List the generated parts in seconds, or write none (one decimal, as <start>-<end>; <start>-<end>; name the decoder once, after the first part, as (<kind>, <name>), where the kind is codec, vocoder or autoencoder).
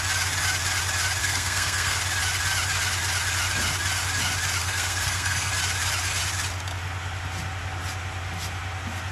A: 1.2-2.0 (codec, SNAC); 4.6-5.5